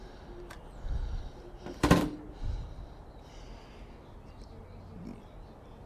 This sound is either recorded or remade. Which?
remade